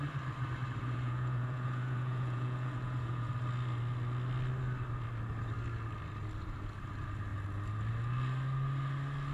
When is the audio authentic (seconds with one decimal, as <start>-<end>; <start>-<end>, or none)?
0.0-0.8; 3.3-9.3